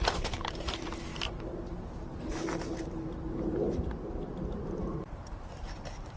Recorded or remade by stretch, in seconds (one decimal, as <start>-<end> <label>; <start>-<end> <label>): 0.0-6.2 remade

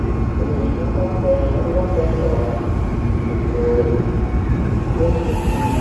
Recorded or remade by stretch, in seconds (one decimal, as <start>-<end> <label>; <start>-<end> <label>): 0.0-2.2 recorded; 2.2-4.8 remade; 4.8-5.8 recorded

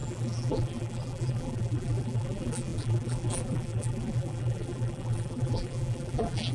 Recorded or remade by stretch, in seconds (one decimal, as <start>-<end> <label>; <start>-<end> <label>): 0.0-6.5 remade

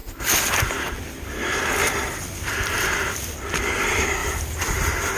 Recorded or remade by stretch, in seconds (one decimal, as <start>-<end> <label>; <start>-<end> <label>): 0.0-3.0 remade; 3.0-4.2 recorded; 4.2-4.7 remade; 4.7-5.2 recorded

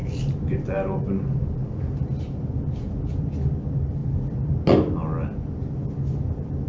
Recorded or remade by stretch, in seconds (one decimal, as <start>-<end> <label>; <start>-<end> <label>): 0.0-3.1 remade; 3.1-6.7 recorded

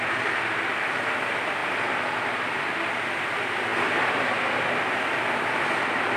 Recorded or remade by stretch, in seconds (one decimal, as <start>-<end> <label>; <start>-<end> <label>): 0.0-6.2 recorded

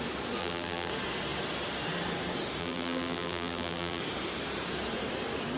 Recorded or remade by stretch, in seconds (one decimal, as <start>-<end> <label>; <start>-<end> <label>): 0.0-0.4 recorded; 0.4-0.9 remade; 0.9-2.6 recorded; 2.6-4.0 remade; 4.0-5.6 recorded

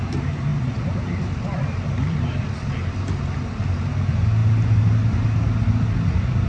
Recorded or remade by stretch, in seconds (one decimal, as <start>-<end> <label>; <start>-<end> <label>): 0.0-0.5 recorded; 0.5-2.9 remade; 2.9-6.5 recorded